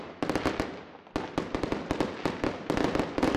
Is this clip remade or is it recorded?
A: recorded